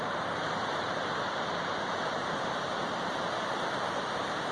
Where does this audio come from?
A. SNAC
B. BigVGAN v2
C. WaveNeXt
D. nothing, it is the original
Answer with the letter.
B